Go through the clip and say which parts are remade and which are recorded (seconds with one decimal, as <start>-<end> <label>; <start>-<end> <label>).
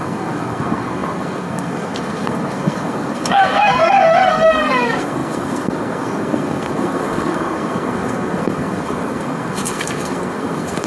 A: 0.0-10.9 remade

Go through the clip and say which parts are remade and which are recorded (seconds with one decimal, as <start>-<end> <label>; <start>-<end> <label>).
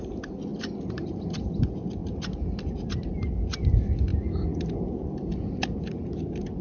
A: 0.0-6.6 recorded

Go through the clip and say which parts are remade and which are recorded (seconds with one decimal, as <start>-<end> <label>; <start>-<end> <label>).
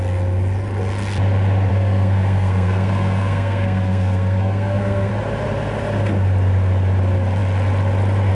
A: 0.0-1.7 recorded; 1.7-5.1 remade; 5.1-8.3 recorded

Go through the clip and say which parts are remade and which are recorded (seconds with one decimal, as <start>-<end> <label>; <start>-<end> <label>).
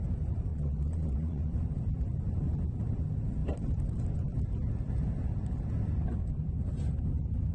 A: 0.0-0.5 recorded; 0.5-1.5 remade; 1.5-7.5 recorded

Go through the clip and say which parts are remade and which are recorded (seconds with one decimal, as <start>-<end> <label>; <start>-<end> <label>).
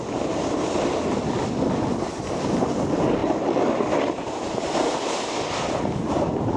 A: 0.0-6.6 recorded